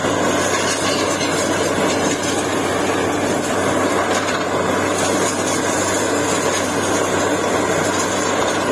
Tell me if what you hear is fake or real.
real